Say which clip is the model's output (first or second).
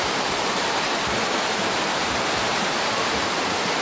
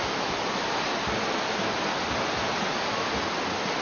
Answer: first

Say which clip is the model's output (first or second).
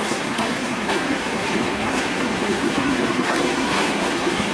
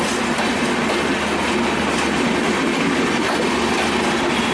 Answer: first